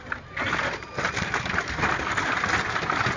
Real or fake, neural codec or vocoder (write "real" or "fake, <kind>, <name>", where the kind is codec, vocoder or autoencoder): real